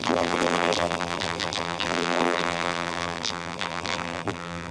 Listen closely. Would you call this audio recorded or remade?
remade